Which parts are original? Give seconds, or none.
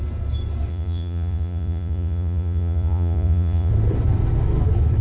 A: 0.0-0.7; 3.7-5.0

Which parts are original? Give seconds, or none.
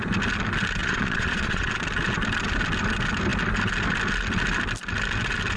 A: 0.0-0.8; 1.7-5.6